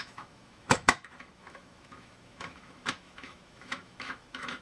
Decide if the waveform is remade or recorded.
remade